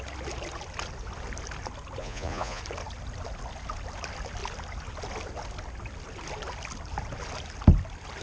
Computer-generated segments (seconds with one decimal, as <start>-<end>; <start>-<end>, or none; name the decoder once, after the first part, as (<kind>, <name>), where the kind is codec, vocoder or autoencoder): 2.0-2.6 (vocoder, Vocos)